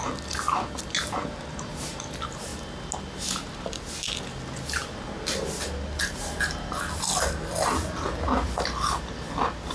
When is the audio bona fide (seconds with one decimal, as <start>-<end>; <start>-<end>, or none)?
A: 0.0-9.7